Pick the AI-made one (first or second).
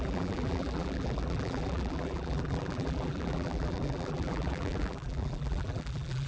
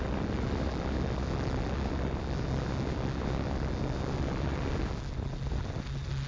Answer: first